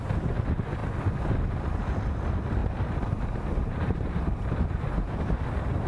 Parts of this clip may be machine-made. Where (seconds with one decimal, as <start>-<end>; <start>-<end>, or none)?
2.6-4.3